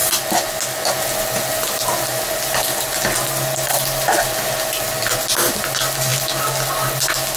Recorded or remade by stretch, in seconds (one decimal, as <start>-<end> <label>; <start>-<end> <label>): 0.0-7.4 recorded